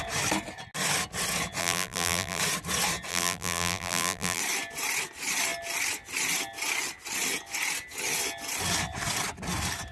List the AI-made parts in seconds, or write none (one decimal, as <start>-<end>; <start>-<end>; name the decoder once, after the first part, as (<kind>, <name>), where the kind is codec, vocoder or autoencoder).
1.6-2.4 (vocoder, BigVGAN v2); 3.1-4.4